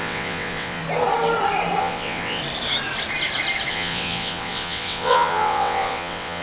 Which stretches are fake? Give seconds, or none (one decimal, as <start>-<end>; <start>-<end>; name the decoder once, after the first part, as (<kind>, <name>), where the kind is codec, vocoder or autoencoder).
0.0-0.8 (vocoder, WaveNeXt); 1.8-2.4; 3.7-6.4